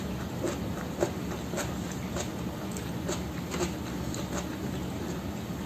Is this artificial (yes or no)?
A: no